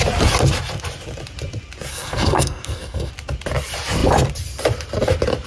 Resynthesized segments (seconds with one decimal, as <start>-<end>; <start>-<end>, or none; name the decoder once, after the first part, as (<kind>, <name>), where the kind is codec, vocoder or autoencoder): 1.9-3.1 (codec, SNAC)